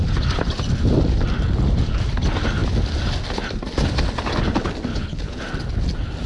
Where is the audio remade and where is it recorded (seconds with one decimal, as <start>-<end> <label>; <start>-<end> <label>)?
0.0-4.9 recorded; 4.9-5.4 remade; 5.4-6.3 recorded